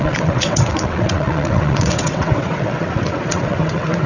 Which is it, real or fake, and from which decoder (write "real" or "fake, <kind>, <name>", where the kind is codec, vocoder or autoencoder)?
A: fake, vocoder, WaveNeXt